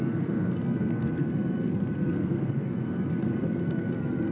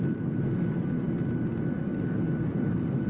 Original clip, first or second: second